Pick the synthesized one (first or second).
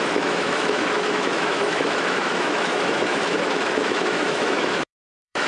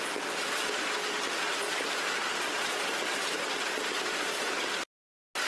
first